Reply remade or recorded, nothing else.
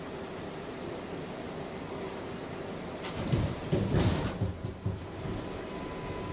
recorded